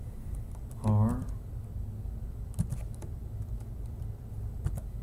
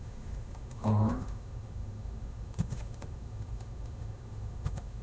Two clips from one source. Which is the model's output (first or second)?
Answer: second